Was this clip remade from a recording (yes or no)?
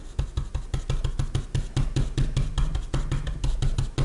no